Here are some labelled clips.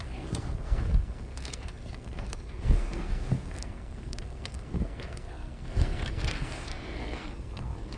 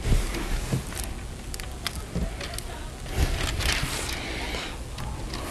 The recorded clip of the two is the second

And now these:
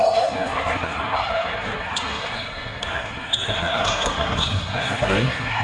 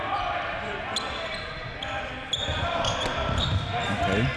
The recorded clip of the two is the second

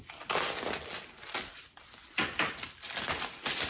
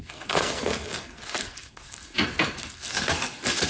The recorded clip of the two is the first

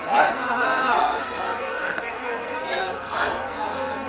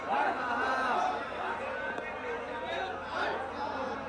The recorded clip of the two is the second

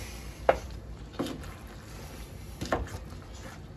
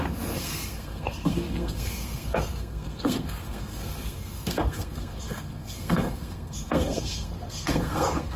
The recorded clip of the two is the first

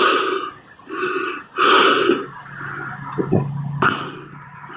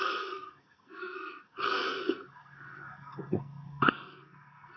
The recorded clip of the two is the first